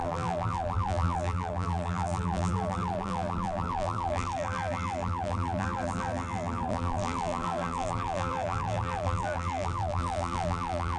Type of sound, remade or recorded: remade